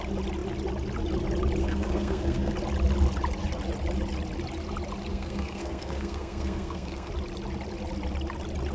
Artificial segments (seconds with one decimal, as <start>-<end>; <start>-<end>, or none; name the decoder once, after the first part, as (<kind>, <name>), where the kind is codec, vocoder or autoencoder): 1.6-2.5 (codec, SNAC); 5.1-7.1